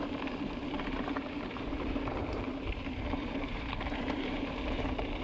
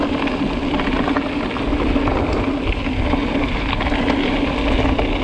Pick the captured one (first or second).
second